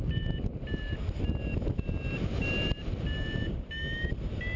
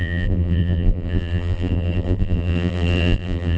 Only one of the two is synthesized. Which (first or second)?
second